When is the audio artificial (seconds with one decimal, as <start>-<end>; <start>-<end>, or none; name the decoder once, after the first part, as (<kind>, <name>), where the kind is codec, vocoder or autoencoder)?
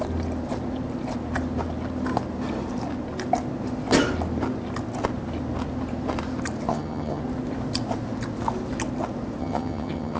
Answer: 6.7-7.2 (vocoder, HiFi-GAN); 9.4-10.2